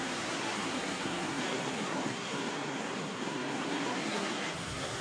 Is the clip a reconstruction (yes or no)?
yes